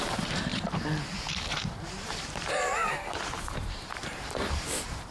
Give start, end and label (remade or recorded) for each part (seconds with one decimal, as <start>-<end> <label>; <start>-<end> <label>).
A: 0.0-0.5 remade; 0.5-1.5 recorded; 1.5-5.1 remade